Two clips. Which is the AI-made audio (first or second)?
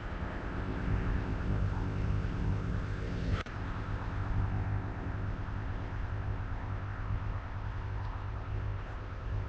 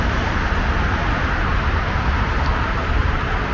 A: first